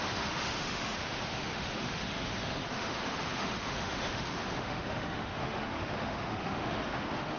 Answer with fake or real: fake